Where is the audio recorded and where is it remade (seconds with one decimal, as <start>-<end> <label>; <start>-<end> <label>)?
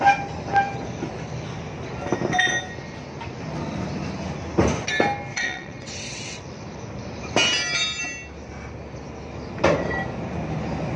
0.0-5.3 recorded; 5.3-6.4 remade; 6.4-11.0 recorded